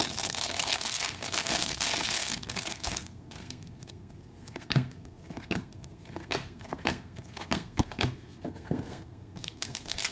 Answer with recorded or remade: remade